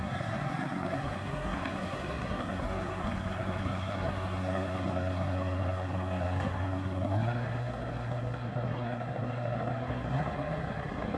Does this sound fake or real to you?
fake